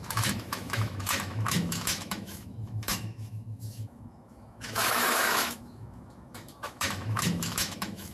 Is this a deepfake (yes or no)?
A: yes